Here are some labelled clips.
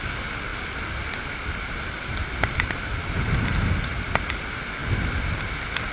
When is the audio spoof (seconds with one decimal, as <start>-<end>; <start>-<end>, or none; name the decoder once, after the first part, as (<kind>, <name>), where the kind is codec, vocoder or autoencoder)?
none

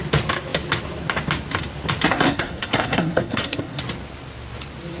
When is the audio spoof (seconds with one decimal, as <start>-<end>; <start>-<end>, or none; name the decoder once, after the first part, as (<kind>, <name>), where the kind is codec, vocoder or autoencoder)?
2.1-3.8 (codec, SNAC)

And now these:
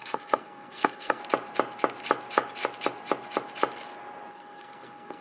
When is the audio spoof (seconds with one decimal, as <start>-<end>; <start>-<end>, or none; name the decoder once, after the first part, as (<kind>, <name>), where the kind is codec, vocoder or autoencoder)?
0.0-1.2 (codec, SNAC); 4.3-5.2

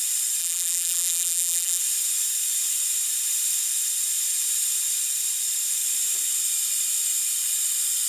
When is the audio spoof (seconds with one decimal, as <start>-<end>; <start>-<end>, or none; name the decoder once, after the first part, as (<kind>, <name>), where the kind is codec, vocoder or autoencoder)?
0.4-1.8 (vocoder, BigVGAN v2)